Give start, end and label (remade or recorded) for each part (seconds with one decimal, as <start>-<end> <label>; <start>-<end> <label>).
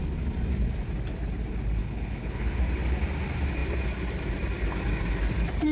0.0-1.8 recorded; 1.8-2.6 remade; 2.6-5.7 recorded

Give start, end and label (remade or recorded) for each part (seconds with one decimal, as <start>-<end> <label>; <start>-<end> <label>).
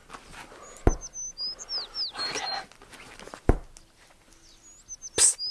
0.0-5.5 recorded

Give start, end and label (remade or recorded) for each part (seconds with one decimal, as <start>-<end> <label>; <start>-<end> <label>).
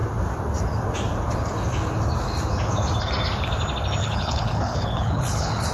0.0-4.0 recorded; 4.0-5.7 remade